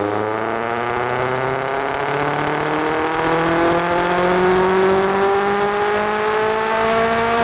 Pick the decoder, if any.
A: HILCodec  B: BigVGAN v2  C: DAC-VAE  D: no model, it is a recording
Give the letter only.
D